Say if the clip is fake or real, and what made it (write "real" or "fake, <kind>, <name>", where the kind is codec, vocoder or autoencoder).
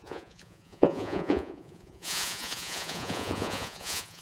fake, vocoder, Vocos